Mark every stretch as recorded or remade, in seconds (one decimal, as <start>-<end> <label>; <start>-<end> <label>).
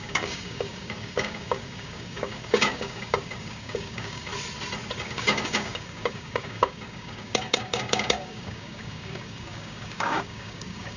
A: 0.0-4.3 remade; 4.3-5.0 recorded; 5.0-11.0 remade